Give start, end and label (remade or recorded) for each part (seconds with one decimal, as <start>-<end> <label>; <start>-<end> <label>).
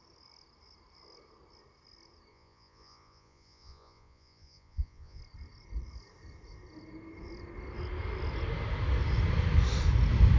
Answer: 0.0-2.3 recorded; 2.3-5.2 remade; 5.2-10.4 recorded